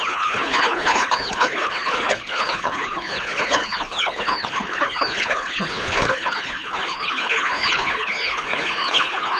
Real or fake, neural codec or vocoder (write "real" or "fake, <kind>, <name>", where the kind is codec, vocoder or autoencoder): fake, codec, HILCodec